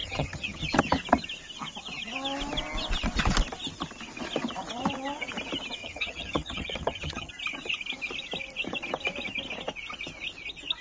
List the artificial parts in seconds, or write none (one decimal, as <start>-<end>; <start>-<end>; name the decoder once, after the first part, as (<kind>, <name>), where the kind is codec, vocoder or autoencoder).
0.0-0.8 (vocoder, HiFi-GAN); 5.8-7.3